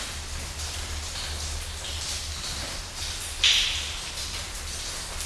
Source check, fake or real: real